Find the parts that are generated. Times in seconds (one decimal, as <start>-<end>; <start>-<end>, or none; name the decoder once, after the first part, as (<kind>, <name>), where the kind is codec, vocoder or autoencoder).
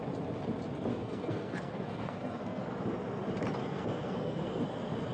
0.9-2.6 (codec, SNAC); 3.6-4.6